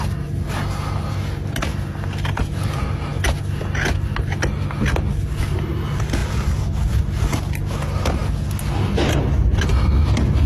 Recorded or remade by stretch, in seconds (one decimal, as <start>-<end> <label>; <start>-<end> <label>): 0.0-10.5 recorded